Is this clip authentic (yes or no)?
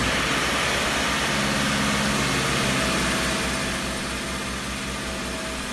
yes